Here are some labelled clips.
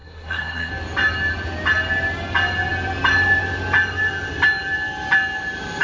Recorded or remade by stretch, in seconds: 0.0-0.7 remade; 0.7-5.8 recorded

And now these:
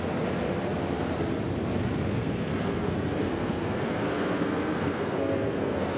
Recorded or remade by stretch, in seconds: 0.0-2.2 recorded; 2.2-6.0 remade

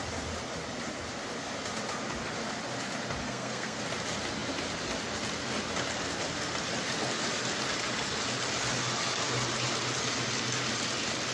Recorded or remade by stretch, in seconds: 0.0-3.2 recorded; 3.2-3.8 remade; 3.8-11.3 recorded